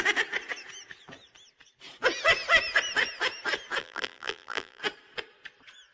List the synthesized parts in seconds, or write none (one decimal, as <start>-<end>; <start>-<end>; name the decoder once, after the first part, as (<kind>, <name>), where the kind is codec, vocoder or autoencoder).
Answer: 3.8-4.8 (vocoder, BigVGAN v2)